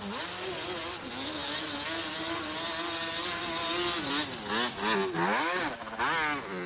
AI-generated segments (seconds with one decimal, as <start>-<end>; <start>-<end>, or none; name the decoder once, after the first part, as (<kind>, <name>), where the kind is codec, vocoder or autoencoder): none